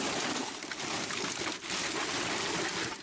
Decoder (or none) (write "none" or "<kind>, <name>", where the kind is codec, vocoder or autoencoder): none